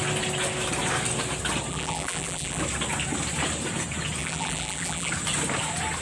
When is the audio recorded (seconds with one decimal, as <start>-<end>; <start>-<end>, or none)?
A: 0.0-1.7; 2.6-4.2; 5.1-6.0